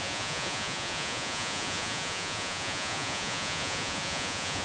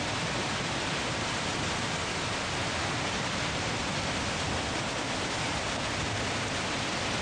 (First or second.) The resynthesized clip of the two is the first